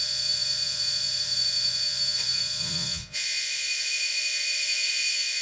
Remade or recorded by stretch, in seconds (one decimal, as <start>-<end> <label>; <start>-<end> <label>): 0.0-5.4 remade